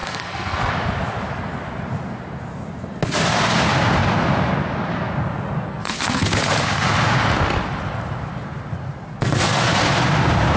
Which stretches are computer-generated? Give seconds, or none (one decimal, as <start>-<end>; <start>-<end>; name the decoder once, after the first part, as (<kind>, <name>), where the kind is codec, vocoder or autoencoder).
0.0-0.7 (codec, SNAC); 5.7-6.3